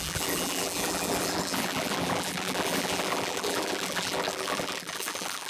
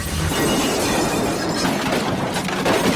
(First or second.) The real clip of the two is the second